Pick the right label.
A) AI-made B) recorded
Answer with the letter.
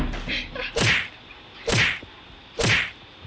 B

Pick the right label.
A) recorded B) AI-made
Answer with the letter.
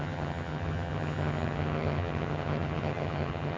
B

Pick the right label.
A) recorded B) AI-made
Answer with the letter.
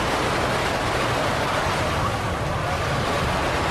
A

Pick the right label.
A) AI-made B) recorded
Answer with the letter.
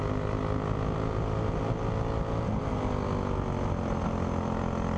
B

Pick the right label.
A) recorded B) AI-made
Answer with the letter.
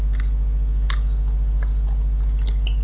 A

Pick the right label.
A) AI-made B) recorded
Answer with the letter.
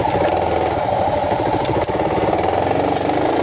B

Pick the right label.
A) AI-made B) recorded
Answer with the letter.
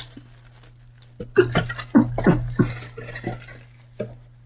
B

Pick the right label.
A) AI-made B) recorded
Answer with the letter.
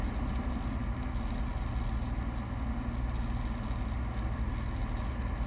B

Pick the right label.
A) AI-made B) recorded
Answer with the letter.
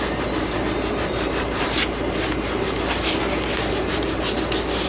B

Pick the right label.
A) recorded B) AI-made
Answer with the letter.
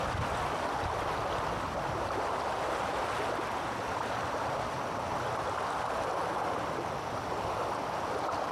A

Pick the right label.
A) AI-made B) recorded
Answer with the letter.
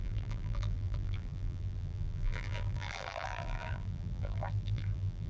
A